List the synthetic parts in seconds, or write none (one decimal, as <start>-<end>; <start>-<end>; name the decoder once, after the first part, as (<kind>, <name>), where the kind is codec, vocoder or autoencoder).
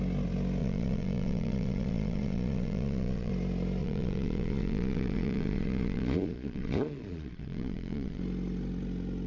0.6-3.3 (vocoder, Vocos); 3.8-8.2